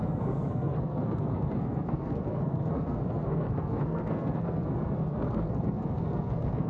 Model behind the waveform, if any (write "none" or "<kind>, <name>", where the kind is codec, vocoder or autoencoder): codec, SNAC